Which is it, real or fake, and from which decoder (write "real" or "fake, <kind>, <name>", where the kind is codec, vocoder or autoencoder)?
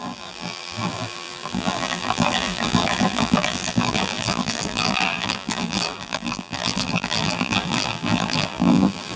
fake, vocoder, BigVGAN v2